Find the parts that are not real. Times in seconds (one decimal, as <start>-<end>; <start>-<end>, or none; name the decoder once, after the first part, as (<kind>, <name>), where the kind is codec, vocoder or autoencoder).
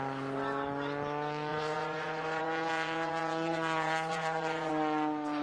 1.5-4.7 (vocoder, Vocos)